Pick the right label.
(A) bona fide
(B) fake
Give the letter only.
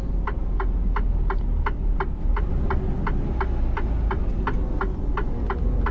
A